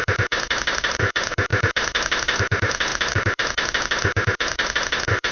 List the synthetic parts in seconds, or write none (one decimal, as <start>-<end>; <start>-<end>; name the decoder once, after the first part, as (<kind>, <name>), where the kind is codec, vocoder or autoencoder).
0.0-5.3 (autoencoder, DAC-VAE)